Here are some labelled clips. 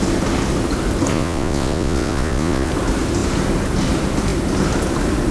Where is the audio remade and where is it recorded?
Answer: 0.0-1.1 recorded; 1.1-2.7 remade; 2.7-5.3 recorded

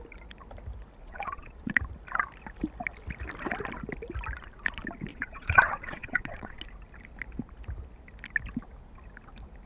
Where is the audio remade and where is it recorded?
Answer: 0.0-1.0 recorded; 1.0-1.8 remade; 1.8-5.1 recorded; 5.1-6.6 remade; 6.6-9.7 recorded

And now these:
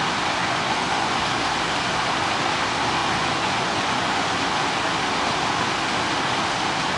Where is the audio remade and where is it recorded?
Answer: 0.0-0.4 recorded; 0.4-1.2 remade; 1.2-3.0 recorded; 3.0-4.7 remade; 4.7-7.0 recorded